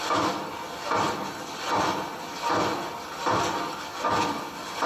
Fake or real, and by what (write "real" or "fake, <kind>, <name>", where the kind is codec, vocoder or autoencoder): real